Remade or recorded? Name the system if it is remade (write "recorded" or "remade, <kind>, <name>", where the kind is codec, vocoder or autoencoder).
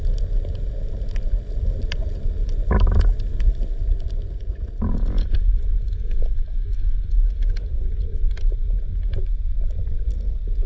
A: recorded